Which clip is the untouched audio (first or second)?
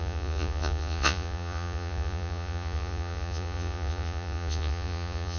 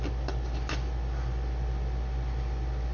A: second